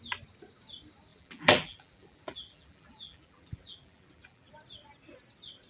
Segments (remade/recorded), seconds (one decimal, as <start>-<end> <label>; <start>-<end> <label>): 0.0-1.1 recorded; 1.1-4.5 remade; 4.5-5.7 recorded